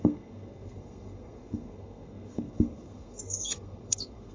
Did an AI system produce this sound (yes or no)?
yes